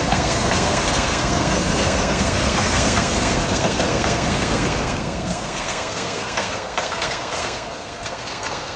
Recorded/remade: remade